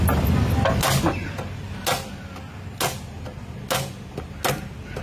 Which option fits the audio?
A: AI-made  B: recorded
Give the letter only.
B